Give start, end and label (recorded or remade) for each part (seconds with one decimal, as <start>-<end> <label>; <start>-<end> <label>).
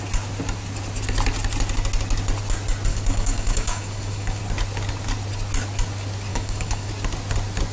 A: 0.0-2.9 recorded; 2.9-4.4 remade; 4.4-6.3 recorded; 6.3-6.9 remade; 6.9-7.7 recorded